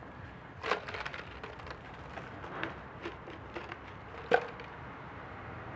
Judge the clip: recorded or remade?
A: recorded